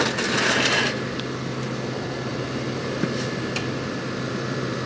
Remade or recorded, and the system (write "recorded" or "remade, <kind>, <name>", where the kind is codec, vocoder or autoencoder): recorded